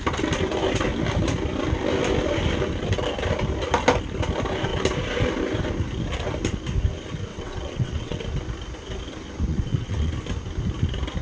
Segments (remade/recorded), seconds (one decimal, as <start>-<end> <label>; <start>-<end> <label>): 0.0-7.3 recorded; 7.3-8.2 remade; 8.2-9.5 recorded; 9.5-10.1 remade; 10.1-11.2 recorded